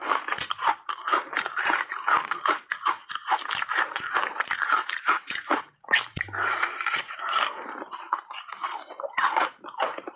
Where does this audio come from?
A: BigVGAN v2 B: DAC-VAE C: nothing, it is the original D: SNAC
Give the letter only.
A